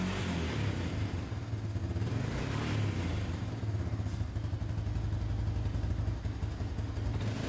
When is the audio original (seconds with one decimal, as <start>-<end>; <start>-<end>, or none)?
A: 0.0-7.5

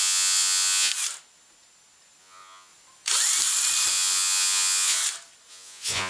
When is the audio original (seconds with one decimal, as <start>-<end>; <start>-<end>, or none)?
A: 0.9-2.2; 2.7-3.9; 5.0-5.5

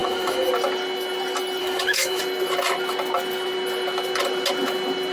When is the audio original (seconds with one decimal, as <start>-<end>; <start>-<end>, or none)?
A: 0.5-1.6; 2.2-5.1

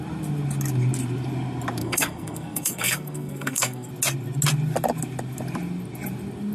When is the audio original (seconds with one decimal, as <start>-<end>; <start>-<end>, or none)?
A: 0.0-1.8; 3.9-6.5

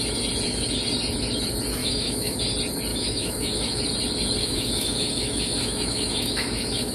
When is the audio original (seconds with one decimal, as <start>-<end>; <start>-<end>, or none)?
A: 0.0-1.8; 2.4-2.9; 3.8-4.4